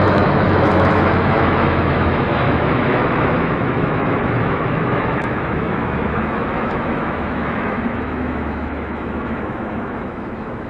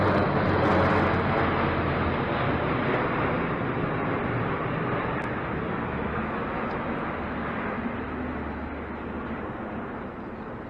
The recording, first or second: second